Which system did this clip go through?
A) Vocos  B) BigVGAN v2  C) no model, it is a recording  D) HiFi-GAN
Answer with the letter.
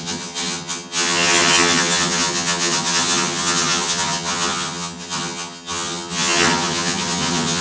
D